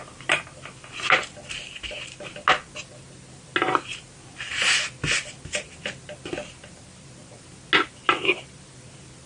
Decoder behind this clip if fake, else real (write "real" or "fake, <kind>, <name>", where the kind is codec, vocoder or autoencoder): real